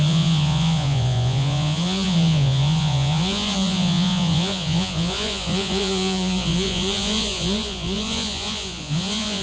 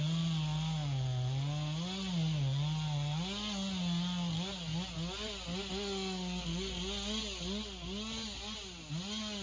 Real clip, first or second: second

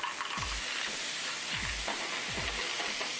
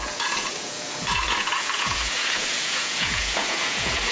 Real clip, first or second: first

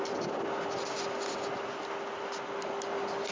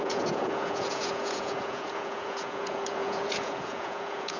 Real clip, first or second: first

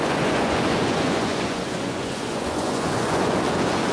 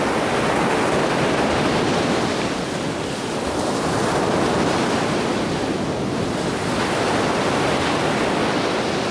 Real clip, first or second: second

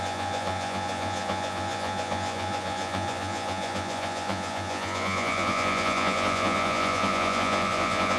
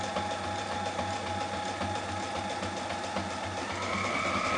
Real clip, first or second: second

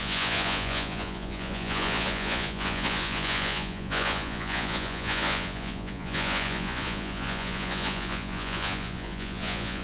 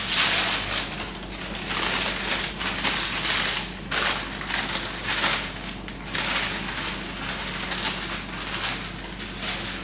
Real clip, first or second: second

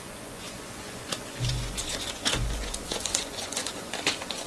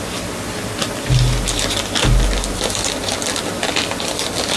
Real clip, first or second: second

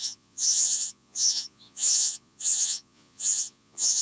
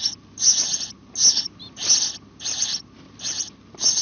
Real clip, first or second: second